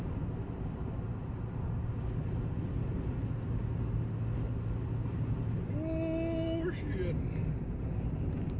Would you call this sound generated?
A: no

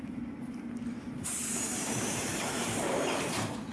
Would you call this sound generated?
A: yes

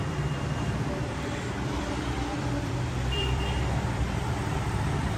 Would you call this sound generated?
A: yes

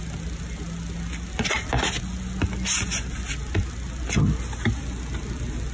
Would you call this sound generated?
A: no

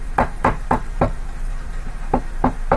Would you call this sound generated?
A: yes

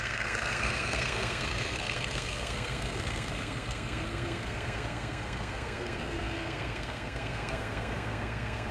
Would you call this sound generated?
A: yes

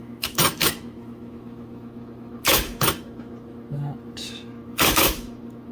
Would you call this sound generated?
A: yes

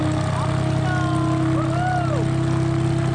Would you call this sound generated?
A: no